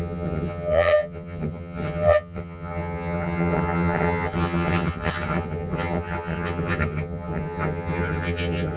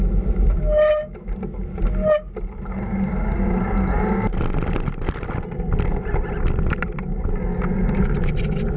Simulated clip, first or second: first